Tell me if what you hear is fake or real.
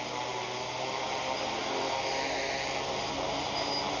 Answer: real